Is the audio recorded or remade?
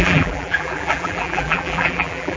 remade